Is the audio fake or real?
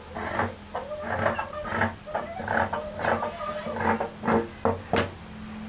real